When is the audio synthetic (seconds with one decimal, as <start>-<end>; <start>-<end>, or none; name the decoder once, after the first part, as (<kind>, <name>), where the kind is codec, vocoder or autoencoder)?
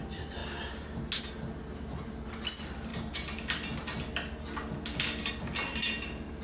none